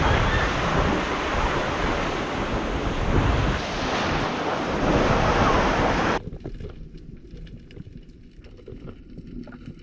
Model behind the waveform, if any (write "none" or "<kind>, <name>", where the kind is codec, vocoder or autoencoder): none